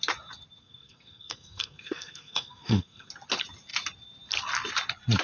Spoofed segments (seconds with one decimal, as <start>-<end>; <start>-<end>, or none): 0.6-3.1